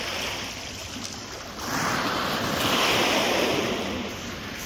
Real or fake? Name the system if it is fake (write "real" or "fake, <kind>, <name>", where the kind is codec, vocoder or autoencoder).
fake, vocoder, BigVGAN v2